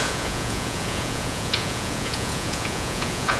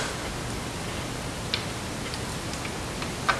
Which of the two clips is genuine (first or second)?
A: second